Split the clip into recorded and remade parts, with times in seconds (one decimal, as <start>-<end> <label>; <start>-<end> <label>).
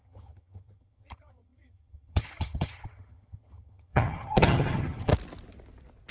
0.0-5.1 remade; 5.1-6.1 recorded